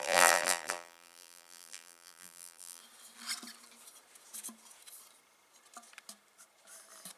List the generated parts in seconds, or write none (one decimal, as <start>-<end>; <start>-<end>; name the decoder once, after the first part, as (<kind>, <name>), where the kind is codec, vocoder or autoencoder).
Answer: 0.0-2.8 (vocoder, BigVGAN v2)